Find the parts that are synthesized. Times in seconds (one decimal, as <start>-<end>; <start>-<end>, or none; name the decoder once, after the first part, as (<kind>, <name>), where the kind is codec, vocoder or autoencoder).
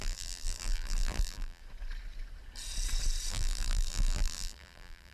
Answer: 0.0-1.6 (vocoder, BigVGAN v2); 3.3-5.1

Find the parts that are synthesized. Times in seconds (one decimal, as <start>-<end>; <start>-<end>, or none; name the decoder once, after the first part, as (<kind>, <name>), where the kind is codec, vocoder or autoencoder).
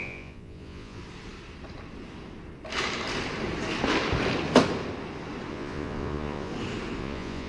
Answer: 0.0-1.0 (vocoder, Vocos); 5.5-6.5; 7.0-7.5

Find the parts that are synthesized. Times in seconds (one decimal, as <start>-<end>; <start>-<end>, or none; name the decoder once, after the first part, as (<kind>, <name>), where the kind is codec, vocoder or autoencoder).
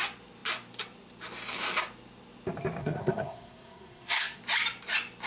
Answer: 2.8-4.4 (codec, SNAC)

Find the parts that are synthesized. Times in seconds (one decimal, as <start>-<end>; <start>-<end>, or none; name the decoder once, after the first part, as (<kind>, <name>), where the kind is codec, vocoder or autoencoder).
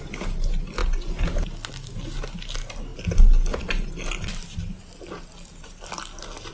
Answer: none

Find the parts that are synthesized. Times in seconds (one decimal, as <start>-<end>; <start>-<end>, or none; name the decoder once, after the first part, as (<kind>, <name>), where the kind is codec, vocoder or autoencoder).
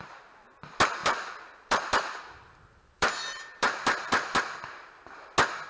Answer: 1.0-4.4 (vocoder, BigVGAN v2)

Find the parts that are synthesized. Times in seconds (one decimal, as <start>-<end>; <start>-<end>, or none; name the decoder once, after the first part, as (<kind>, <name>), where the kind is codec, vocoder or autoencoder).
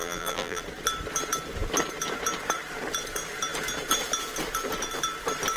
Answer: 0.0-0.6 (vocoder, BigVGAN v2)